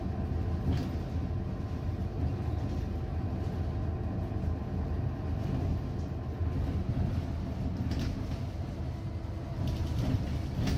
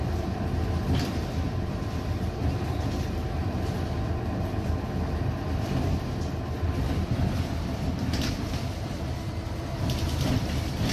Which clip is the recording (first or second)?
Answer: first